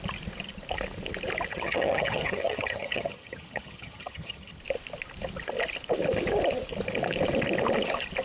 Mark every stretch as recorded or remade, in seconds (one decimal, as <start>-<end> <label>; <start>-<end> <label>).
0.0-1.5 recorded; 1.5-4.6 remade; 4.6-8.2 recorded